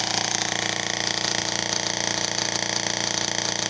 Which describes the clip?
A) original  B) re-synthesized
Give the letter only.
A